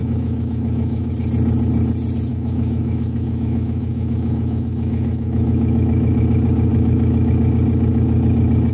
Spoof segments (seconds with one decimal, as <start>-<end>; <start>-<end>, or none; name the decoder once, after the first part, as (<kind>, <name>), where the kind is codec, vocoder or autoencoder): 0.0-1.1 (autoencoder, DAC-VAE); 2.3-6.2; 6.7-7.3